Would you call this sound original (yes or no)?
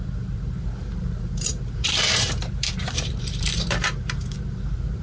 no